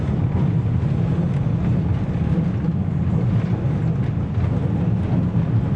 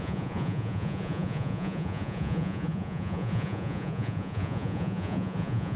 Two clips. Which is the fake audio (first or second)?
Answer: second